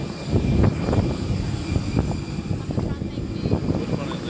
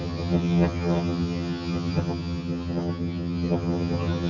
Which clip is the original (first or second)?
first